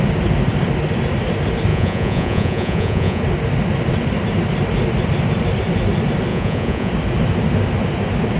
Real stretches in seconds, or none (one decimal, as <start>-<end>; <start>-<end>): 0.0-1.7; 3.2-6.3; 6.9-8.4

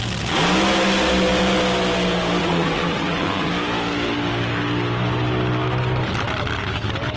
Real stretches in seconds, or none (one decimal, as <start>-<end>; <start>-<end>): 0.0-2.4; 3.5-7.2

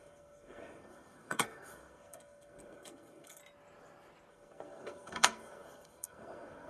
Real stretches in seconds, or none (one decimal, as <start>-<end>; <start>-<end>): 3.4-4.3